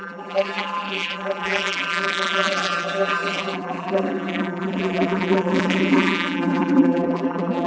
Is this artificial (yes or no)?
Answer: yes